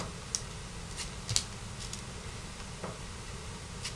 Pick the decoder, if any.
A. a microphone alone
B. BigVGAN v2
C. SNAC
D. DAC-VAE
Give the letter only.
A